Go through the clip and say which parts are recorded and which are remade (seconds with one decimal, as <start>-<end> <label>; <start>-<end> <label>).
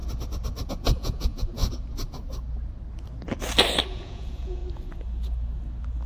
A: 0.0-0.7 recorded; 0.7-1.6 remade; 1.6-3.9 recorded; 3.9-4.6 remade; 4.6-6.1 recorded